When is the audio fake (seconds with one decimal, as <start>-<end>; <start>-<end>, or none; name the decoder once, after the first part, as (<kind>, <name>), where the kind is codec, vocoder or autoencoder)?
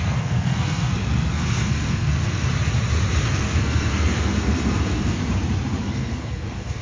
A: 0.0-2.5 (codec, SNAC); 3.2-5.2; 5.8-6.8